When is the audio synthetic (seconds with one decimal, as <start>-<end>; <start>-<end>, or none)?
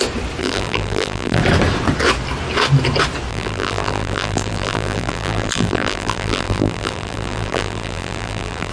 0.4-1.4; 3.3-8.7